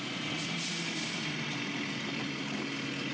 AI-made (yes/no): yes